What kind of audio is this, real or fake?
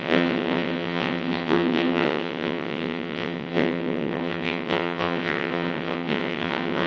fake